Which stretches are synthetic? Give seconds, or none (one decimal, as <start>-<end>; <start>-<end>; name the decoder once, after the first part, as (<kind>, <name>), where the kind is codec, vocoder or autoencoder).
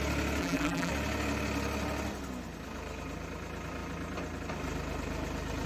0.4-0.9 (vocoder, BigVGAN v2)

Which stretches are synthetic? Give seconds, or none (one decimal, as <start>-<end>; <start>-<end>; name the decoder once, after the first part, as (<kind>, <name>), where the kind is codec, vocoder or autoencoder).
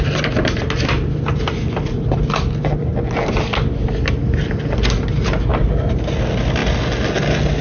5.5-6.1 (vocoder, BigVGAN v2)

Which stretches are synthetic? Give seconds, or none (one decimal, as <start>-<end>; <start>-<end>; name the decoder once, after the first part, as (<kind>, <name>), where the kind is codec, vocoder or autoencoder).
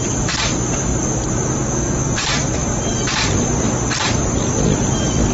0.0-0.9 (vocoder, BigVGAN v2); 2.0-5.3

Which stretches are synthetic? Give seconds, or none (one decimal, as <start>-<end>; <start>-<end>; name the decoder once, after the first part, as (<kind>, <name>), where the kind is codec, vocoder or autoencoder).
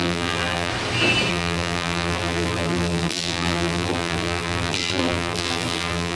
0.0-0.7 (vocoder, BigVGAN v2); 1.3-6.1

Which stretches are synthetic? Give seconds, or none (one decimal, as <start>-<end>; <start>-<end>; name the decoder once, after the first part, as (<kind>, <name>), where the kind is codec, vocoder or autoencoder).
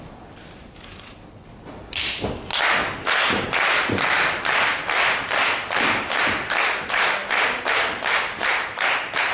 none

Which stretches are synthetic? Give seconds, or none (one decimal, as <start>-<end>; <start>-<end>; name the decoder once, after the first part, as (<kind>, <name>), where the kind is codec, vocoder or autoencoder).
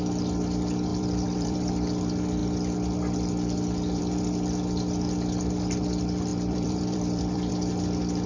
0.9-1.7 (vocoder, BigVGAN v2); 6.3-7.5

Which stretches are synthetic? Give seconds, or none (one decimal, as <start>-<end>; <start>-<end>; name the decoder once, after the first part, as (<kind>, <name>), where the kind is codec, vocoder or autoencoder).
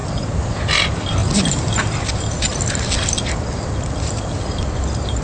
0.0-0.6 (vocoder, BigVGAN v2); 1.2-1.8